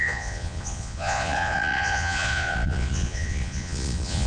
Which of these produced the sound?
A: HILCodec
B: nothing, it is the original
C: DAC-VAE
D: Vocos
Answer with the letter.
D